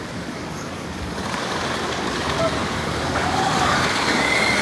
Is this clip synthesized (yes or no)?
yes